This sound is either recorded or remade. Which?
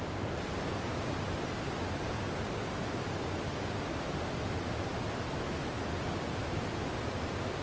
recorded